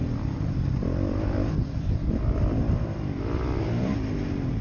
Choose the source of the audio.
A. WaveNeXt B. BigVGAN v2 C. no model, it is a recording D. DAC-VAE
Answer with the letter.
B